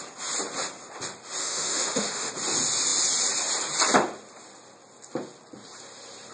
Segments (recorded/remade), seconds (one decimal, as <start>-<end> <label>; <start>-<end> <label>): 0.0-1.4 recorded; 1.4-2.3 remade; 2.3-6.3 recorded

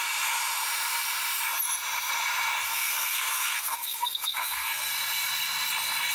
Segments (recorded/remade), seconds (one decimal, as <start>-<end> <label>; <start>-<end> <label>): 0.0-2.7 recorded; 2.7-4.9 remade; 4.9-6.1 recorded

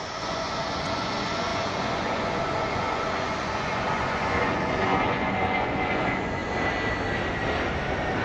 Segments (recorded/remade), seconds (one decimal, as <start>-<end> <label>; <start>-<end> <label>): 0.0-6.4 remade; 6.4-8.2 recorded